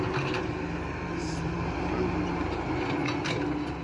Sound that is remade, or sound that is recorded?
recorded